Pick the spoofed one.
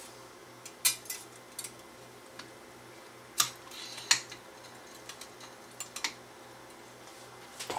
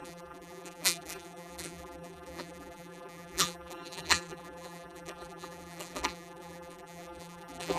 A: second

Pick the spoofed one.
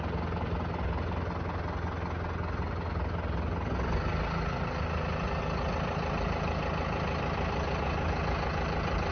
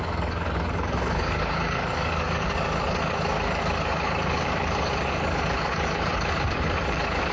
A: second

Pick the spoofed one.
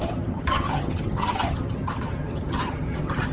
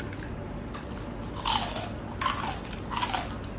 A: first